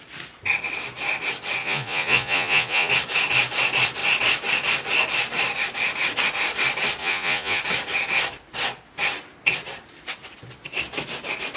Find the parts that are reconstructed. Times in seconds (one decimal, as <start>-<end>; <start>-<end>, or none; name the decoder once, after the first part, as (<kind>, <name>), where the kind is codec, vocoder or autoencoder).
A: 1.6-2.9 (vocoder, Vocos); 7.0-7.6